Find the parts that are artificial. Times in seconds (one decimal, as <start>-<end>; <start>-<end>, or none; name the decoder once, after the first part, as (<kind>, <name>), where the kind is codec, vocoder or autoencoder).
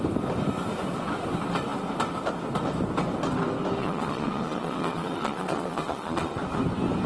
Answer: 3.8-6.4 (vocoder, Vocos)